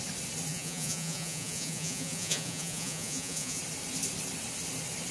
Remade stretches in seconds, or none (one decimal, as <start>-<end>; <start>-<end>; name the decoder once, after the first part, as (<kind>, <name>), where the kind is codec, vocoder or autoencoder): 0.5-3.6 (vocoder, Vocos)